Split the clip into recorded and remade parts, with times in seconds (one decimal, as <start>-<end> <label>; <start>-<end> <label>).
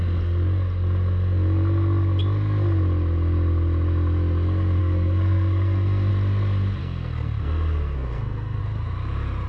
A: 0.0-4.8 recorded; 4.8-6.1 remade; 6.1-6.8 recorded; 6.8-8.6 remade; 8.6-9.5 recorded